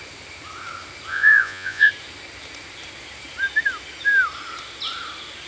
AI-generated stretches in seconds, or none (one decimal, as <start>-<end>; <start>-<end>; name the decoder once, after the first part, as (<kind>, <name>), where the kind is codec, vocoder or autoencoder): 1.1-1.9 (vocoder, Vocos)